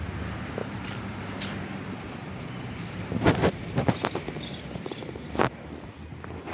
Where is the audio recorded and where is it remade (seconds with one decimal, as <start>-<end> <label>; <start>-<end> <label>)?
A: 0.0-0.6 recorded; 0.6-1.2 remade; 1.2-2.2 recorded; 2.2-5.5 remade; 5.5-6.5 recorded